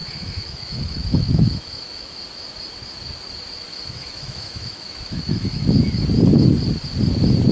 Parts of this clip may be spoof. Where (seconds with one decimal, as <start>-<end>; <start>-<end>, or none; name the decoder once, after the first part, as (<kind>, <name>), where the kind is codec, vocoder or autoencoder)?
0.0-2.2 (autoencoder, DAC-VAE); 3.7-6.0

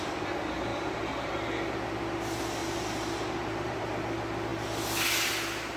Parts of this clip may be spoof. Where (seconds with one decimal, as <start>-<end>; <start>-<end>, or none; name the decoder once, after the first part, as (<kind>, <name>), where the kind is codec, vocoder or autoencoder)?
0.7-1.3 (vocoder, BigVGAN v2); 2.6-3.8

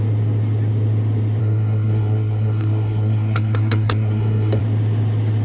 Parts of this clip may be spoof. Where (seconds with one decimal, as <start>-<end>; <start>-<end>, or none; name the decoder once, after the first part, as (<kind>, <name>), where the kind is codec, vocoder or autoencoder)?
1.4-4.6 (codec, SNAC)

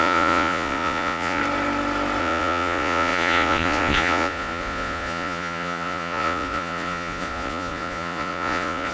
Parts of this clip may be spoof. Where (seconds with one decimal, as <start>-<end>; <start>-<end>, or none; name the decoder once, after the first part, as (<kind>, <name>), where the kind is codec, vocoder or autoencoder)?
0.0-1.4 (vocoder, Vocos); 2.2-8.9

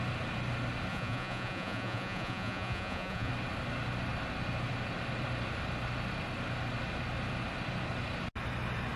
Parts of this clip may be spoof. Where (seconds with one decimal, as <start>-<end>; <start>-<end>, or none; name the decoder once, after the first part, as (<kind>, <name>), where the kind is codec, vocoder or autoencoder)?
0.9-3.3 (vocoder, Vocos)

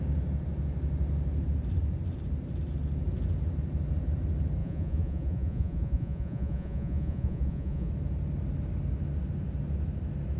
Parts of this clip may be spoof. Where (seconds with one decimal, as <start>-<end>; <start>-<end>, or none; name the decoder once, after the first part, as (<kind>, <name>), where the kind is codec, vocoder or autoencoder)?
4.6-7.9 (vocoder, Vocos)

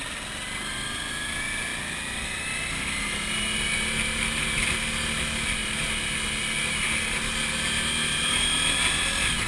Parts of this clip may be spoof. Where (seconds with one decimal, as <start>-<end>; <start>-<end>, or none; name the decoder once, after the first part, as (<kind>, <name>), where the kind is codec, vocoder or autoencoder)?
none

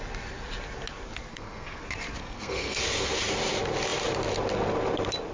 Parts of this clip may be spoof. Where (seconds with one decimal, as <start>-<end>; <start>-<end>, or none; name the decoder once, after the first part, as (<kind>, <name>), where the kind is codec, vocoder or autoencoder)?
1.3-1.8 (codec, SNAC); 2.2-2.8